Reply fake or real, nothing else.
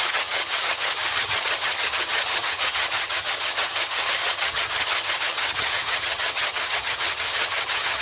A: fake